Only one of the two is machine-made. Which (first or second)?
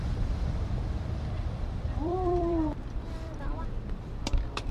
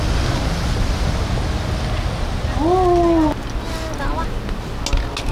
first